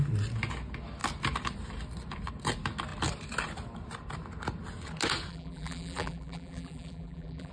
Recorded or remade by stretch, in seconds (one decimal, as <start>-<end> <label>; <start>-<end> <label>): 0.0-5.3 recorded; 5.3-7.5 remade